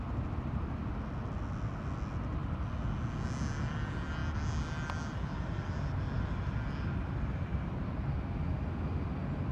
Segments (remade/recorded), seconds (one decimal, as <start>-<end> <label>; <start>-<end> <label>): 0.0-9.5 recorded

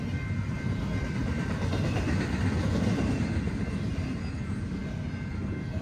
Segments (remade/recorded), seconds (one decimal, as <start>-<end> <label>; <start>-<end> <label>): 0.0-5.8 recorded